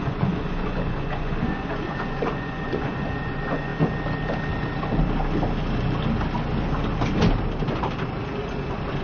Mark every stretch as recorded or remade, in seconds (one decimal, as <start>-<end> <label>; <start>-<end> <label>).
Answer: 0.0-3.7 remade; 3.7-8.4 recorded; 8.4-9.0 remade